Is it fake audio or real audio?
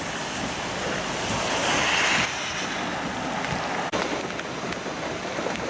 real